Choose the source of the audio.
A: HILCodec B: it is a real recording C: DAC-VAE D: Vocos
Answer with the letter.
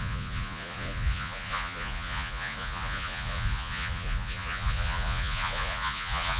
D